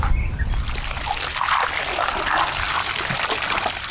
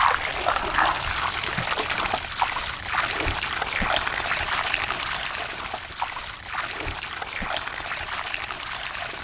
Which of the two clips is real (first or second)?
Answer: first